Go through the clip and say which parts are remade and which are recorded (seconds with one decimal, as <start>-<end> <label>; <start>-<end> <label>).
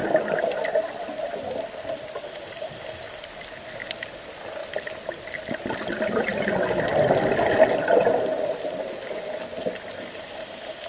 0.0-2.8 remade; 2.8-10.9 recorded